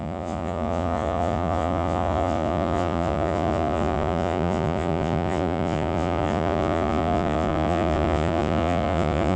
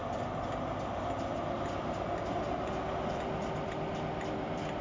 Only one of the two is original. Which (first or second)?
second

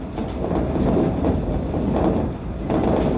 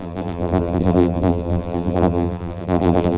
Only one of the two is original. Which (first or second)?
first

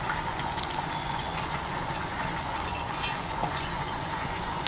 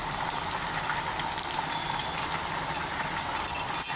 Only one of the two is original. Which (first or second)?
second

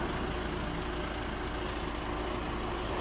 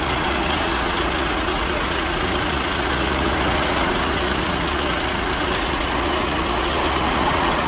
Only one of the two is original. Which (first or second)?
first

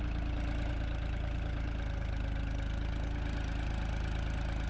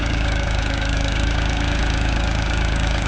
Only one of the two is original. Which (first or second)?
first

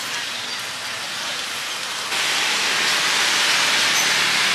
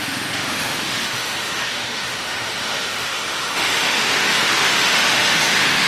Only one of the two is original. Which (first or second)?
first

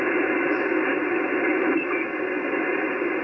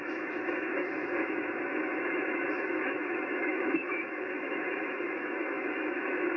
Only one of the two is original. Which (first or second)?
first